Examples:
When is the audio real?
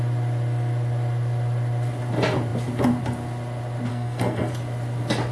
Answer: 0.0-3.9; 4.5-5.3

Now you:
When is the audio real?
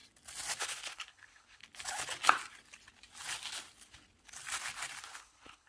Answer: 0.0-0.6; 1.6-5.0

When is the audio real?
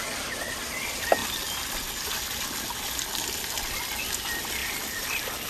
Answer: 0.0-5.5